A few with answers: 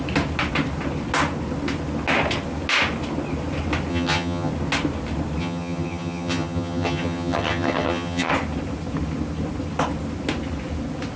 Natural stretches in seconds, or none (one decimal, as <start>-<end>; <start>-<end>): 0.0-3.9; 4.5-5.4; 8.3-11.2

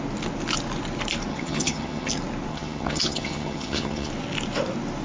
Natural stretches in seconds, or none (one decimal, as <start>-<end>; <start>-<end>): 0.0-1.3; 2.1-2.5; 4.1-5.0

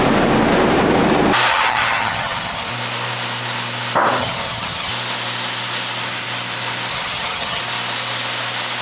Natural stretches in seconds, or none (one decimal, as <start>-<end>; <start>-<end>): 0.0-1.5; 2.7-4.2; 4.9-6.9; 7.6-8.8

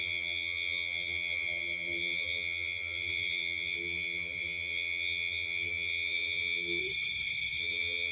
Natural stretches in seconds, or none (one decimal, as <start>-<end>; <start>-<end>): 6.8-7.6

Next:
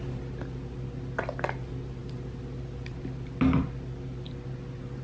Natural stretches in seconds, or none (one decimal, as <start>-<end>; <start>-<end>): 0.0-5.0